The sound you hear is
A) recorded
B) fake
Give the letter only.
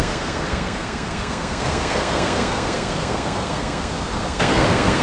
B